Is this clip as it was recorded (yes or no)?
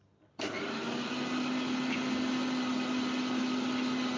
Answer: yes